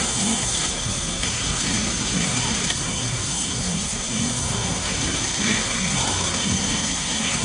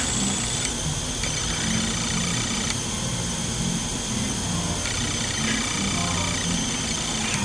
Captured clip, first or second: second